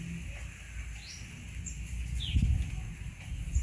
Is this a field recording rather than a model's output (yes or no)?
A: yes